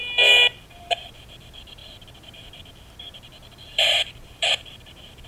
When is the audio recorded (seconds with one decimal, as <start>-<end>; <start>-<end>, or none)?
0.0-0.6

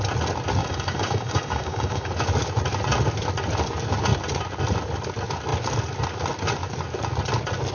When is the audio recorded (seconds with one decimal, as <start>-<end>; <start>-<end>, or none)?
0.0-0.6; 2.1-7.7

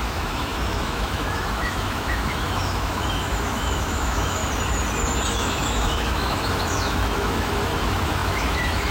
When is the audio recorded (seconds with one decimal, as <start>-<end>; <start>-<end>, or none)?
4.4-5.3